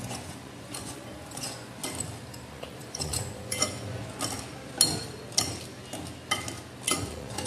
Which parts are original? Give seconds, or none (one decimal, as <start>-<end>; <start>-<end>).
1.8-2.5; 4.0-6.9